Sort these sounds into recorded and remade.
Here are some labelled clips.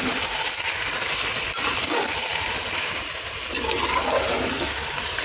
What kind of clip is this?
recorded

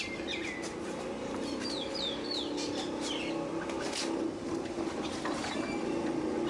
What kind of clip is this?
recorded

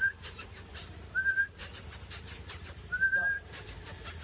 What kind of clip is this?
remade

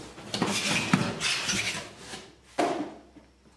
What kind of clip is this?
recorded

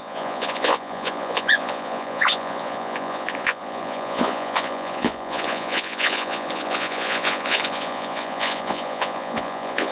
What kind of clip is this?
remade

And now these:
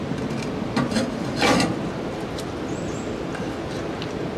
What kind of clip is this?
recorded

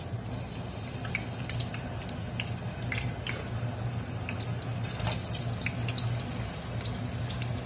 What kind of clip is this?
recorded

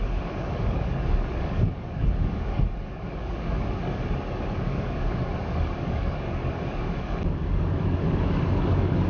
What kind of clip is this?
remade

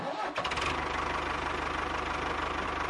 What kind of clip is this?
recorded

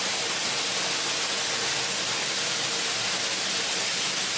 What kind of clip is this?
recorded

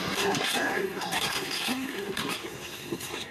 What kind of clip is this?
remade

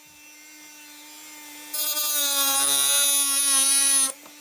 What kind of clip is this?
recorded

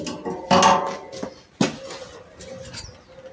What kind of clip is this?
recorded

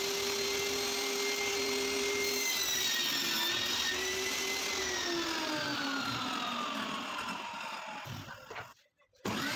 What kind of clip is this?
recorded